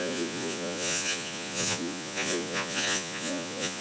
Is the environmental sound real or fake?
fake